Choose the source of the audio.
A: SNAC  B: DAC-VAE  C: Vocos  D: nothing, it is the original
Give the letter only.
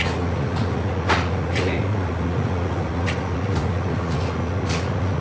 C